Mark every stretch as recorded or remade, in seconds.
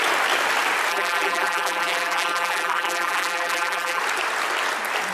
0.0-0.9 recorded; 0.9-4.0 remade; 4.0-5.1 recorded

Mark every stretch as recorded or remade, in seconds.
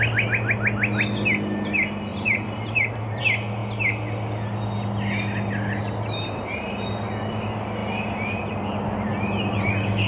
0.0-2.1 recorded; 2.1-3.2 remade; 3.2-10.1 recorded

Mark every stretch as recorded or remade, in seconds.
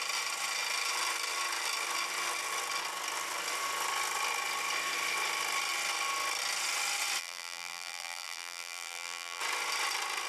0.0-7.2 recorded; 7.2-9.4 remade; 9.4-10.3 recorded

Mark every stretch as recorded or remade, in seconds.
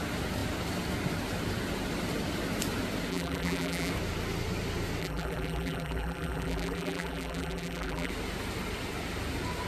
0.0-3.1 recorded; 3.1-3.9 remade; 3.9-5.0 recorded; 5.0-8.1 remade; 8.1-9.7 recorded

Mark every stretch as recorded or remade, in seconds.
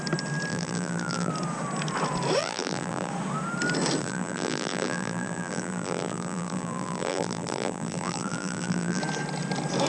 0.0-0.5 recorded; 0.5-1.3 remade; 1.3-2.4 recorded; 2.4-3.1 remade; 3.1-4.0 recorded; 4.0-9.0 remade; 9.0-9.9 recorded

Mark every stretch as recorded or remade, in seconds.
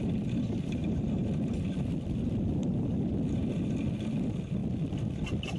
0.0-5.6 remade